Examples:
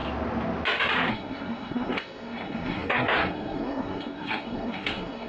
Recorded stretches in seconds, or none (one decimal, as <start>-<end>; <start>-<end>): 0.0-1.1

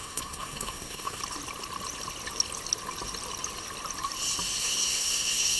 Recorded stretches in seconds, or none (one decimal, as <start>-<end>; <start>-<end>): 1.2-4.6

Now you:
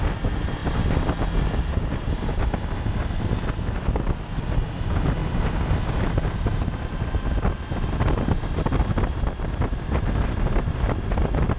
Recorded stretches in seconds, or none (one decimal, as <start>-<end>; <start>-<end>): 0.0-11.6

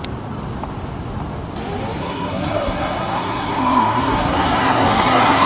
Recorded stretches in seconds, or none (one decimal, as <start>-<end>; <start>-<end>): 0.0-2.0

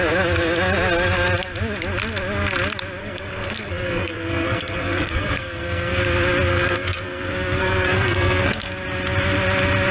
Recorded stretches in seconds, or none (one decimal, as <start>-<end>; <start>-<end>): 0.0-3.0; 6.0-6.5; 8.7-9.9

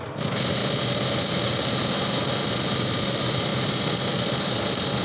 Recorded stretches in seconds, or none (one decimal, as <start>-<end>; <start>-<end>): 0.0-5.0